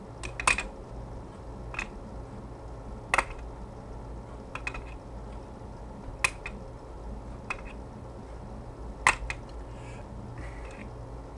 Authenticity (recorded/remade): recorded